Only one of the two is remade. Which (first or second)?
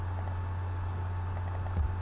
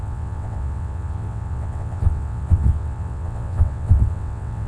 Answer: second